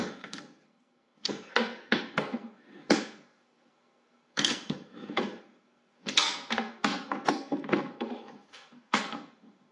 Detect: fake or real fake